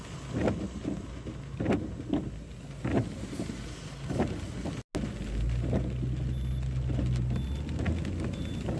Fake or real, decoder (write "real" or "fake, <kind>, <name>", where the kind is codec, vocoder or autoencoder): real